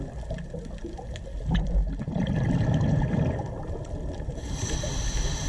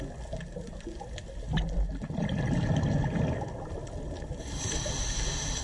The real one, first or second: second